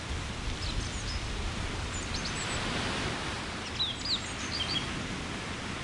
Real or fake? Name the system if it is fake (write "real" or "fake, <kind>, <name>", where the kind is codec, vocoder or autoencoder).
real